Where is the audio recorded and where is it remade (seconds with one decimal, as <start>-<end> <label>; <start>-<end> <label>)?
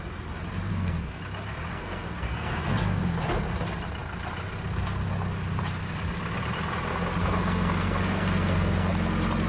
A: 0.0-0.7 recorded; 0.7-1.2 remade; 1.2-1.7 recorded; 1.7-3.0 remade; 3.0-7.2 recorded; 7.2-8.9 remade; 8.9-9.5 recorded